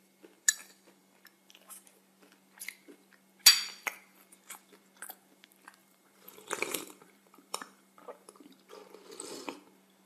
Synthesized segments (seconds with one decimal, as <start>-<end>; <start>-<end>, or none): 5.8-8.5